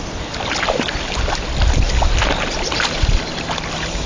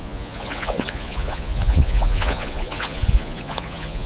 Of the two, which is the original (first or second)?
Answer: first